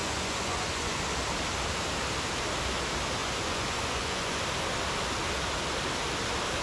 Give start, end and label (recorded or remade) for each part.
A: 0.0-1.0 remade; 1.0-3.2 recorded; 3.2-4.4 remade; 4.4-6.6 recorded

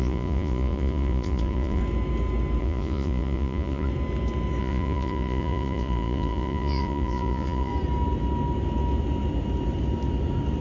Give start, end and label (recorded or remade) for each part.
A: 0.0-1.8 remade; 1.8-2.6 recorded; 2.6-3.9 remade; 3.9-4.6 recorded; 4.6-7.7 remade; 7.7-10.6 recorded

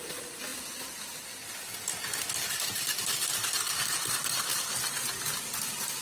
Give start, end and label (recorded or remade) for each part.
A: 0.0-6.0 recorded

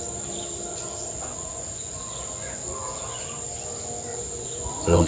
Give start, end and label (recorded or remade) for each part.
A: 0.0-0.7 recorded; 0.7-3.1 remade; 3.1-4.1 recorded; 4.1-5.1 remade

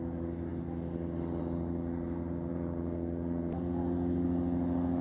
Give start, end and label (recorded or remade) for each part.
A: 0.0-2.5 recorded; 2.5-3.5 remade; 3.5-5.0 recorded

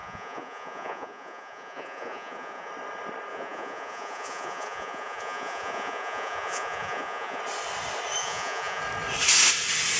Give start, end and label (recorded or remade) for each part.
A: 0.0-2.7 remade; 2.7-3.3 recorded; 3.3-7.4 remade; 7.4-8.2 recorded; 8.2-8.8 remade; 8.8-10.0 recorded

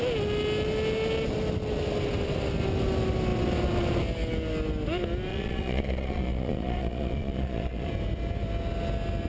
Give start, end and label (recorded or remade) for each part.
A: 0.0-5.3 recorded; 5.3-7.9 remade; 7.9-9.3 recorded